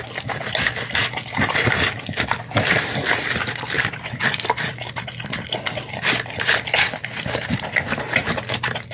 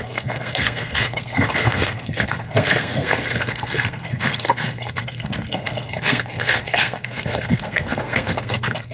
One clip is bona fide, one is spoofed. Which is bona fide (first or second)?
first